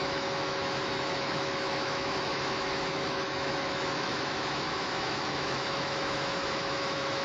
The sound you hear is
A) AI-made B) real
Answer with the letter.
A